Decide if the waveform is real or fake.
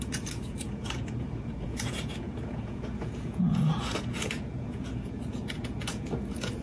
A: fake